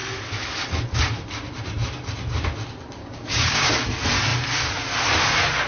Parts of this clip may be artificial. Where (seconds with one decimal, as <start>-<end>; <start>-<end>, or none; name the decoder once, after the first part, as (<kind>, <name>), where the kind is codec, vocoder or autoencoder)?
3.0-3.7 (codec, DAC)

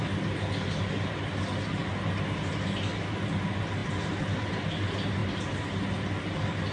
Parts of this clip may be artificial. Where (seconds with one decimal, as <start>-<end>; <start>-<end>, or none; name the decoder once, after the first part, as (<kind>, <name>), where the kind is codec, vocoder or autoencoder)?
none

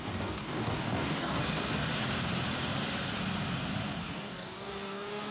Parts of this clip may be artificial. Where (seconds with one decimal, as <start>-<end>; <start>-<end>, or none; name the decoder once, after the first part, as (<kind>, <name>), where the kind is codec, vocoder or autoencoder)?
0.0-1.4 (codec, DAC); 4.0-5.3

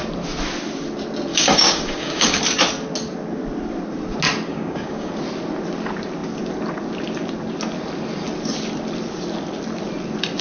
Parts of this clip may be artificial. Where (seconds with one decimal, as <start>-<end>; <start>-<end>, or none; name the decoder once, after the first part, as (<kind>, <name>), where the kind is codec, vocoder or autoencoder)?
1.3-2.4 (codec, DAC); 4.5-5.1